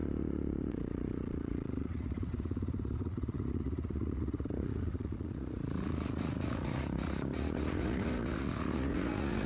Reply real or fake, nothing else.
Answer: fake